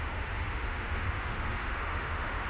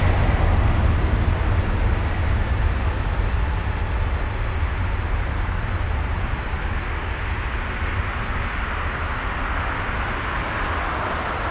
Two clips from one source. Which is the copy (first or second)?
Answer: first